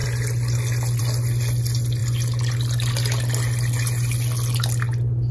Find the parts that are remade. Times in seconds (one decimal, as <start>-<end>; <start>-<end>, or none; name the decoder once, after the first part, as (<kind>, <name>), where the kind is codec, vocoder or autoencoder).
none